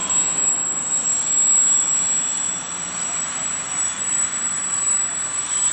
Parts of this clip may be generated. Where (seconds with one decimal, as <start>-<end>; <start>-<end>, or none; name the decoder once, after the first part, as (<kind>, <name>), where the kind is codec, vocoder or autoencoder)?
0.0-5.7 (vocoder, BigVGAN v2)